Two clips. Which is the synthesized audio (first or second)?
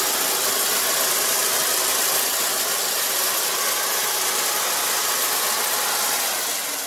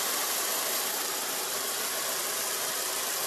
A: second